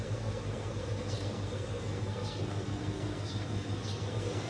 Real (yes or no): no